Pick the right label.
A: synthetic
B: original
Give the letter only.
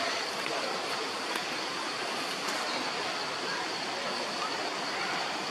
B